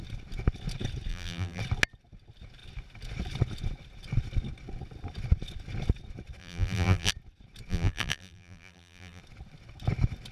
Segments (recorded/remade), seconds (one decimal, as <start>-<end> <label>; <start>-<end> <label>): 0.0-1.1 recorded; 1.1-1.6 remade; 1.6-6.4 recorded; 6.4-7.1 remade; 7.1-7.7 recorded; 7.7-9.2 remade; 9.2-10.3 recorded